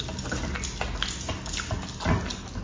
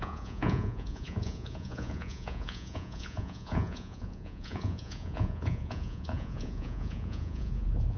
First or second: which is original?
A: first